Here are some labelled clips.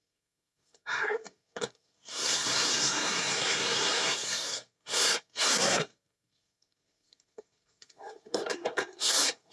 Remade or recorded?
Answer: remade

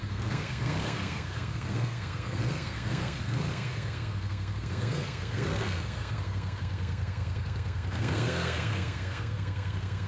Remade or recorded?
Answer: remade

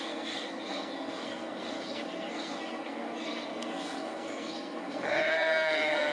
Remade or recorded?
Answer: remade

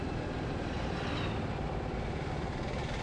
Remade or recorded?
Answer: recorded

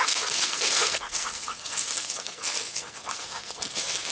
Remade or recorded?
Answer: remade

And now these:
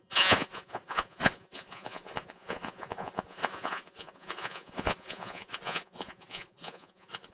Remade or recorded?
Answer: remade